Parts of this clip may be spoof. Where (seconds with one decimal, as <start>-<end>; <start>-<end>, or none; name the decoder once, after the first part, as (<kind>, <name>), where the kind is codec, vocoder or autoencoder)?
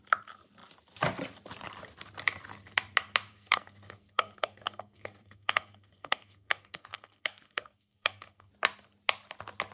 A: 3.3-8.5 (codec, SNAC)